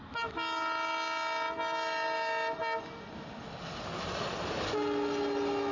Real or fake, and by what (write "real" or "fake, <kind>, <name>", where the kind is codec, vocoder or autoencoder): real